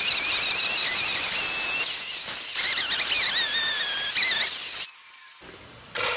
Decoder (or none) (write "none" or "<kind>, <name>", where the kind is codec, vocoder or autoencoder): none